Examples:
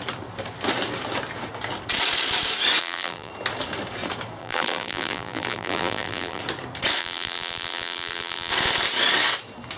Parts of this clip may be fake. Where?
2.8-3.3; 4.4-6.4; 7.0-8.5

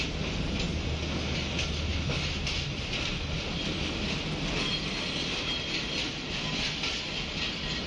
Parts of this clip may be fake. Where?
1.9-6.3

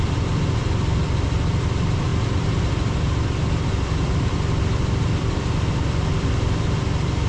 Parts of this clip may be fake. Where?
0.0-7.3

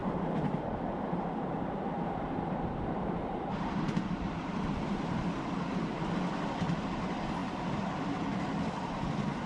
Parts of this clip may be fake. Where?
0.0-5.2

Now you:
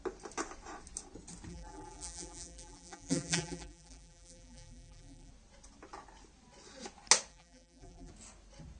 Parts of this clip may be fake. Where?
1.5-5.3; 7.3-8.1

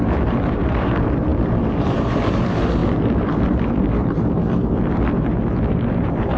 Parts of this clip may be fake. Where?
0.0-6.4

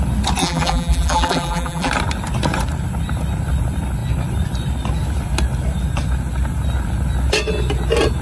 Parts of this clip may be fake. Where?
0.4-1.9

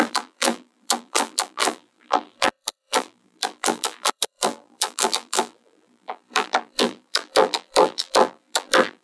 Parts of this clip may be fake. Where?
0.0-9.0